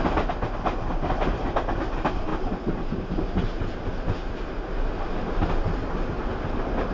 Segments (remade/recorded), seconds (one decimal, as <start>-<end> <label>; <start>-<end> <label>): 0.0-6.9 recorded